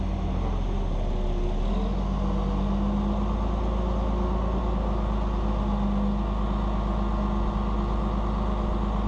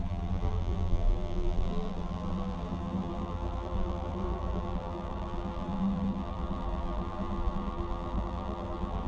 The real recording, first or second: first